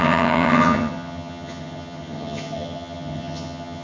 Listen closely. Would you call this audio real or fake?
fake